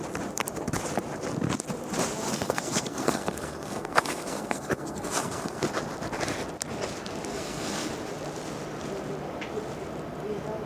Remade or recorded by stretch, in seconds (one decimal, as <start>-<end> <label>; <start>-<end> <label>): 0.0-2.3 recorded; 2.3-5.6 remade; 5.6-7.3 recorded; 7.3-7.9 remade; 7.9-10.7 recorded